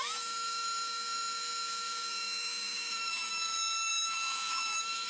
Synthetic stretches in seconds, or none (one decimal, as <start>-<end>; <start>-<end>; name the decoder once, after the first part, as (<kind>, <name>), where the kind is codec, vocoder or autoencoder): 0.0-5.1 (autoencoder, DAC-VAE)